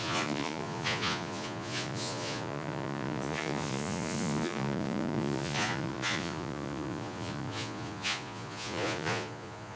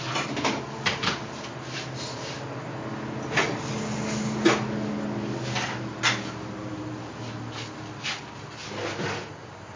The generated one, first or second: first